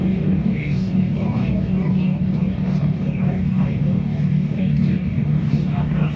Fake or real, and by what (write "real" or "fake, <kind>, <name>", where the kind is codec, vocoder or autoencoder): fake, codec, DAC